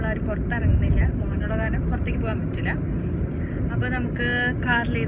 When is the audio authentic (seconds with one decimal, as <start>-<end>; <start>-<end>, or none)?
0.0-0.7; 3.8-5.1